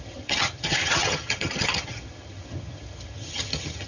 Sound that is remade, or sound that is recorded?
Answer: remade